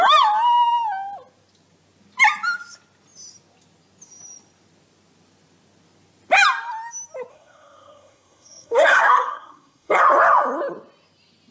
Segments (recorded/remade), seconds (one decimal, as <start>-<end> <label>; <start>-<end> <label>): 0.0-7.3 recorded; 7.3-10.0 remade; 10.0-11.5 recorded